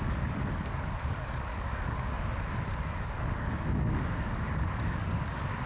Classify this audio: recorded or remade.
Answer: remade